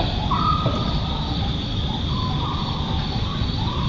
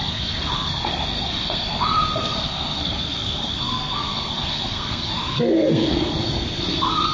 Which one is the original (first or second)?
first